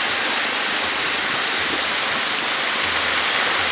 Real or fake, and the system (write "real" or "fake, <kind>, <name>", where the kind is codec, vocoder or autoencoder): real